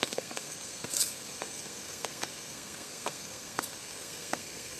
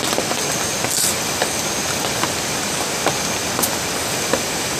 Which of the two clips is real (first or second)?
second